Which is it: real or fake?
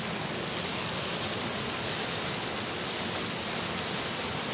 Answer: real